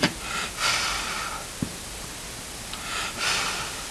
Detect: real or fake real